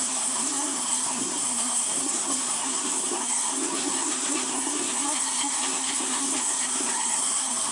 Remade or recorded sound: remade